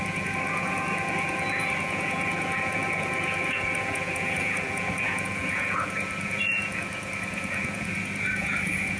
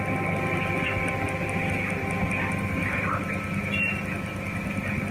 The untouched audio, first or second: second